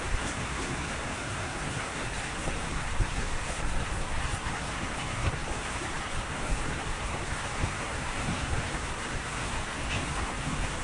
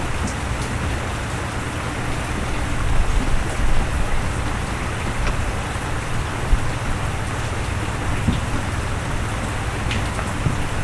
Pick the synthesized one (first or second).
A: first